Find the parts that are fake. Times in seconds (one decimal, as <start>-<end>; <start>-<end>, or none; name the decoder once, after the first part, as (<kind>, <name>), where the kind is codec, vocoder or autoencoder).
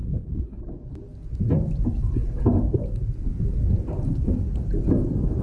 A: 0.0-0.6 (codec, HILCodec)